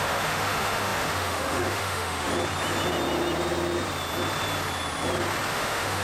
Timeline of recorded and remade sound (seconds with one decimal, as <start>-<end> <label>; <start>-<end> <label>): 0.0-2.3 remade; 2.3-5.5 recorded; 5.5-6.0 remade